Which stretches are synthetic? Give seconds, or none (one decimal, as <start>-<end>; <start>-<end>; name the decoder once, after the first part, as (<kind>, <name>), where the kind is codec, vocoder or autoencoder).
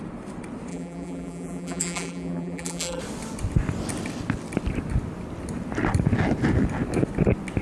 0.7-3.0 (vocoder, BigVGAN v2)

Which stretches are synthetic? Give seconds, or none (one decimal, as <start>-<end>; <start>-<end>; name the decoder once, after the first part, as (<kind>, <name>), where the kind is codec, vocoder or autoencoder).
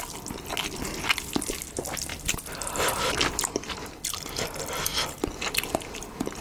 none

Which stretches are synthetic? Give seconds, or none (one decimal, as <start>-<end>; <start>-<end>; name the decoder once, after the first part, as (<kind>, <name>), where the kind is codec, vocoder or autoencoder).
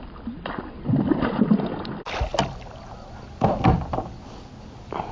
none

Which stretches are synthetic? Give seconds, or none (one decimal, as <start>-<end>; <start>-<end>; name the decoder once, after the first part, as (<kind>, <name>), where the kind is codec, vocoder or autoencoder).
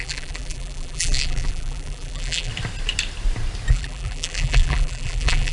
0.0-2.5 (vocoder, BigVGAN v2); 3.7-5.5